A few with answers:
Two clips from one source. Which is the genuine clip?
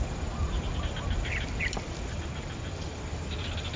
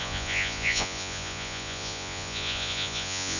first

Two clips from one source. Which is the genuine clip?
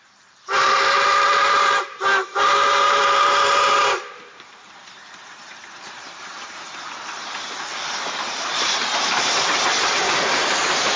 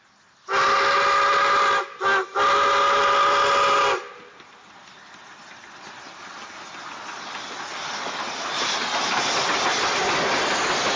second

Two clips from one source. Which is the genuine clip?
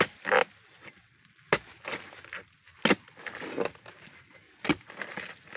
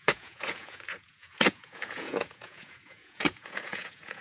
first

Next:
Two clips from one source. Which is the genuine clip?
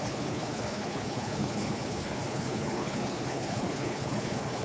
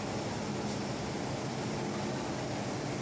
second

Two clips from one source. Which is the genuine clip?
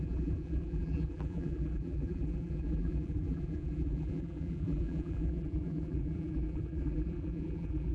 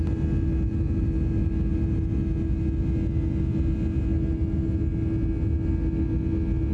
second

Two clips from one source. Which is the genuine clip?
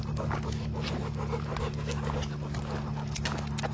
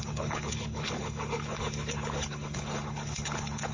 first